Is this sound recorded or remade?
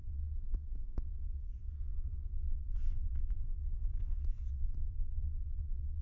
remade